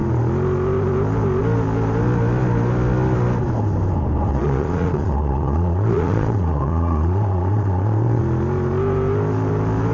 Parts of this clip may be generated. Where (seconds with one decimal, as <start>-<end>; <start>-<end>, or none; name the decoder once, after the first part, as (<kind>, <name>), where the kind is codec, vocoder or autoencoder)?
4.3-8.2 (vocoder, Vocos)